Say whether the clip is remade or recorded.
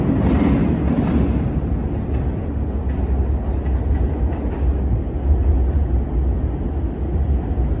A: recorded